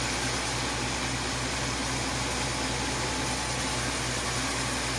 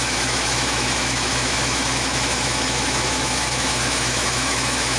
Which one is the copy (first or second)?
second